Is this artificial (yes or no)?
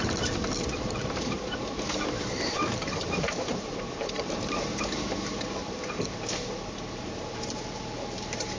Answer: yes